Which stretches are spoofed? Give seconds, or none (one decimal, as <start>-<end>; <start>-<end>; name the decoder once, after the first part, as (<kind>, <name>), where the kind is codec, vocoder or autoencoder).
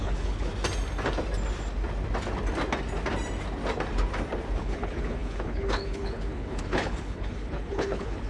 0.0-0.5 (codec, HILCodec); 4.6-8.3